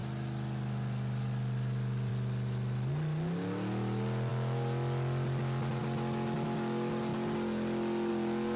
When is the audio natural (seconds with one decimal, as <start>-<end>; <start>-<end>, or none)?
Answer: 0.0-8.6